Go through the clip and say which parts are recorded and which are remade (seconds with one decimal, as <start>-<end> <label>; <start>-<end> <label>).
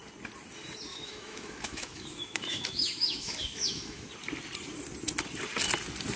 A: 0.0-0.9 recorded; 0.9-4.1 remade; 4.1-6.2 recorded